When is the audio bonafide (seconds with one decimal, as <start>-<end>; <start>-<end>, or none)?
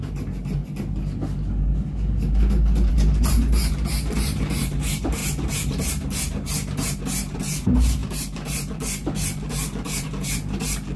0.6-2.9